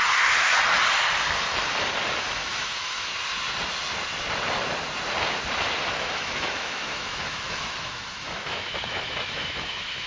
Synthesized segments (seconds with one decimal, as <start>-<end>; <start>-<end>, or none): 2.2-3.1; 5.9-10.1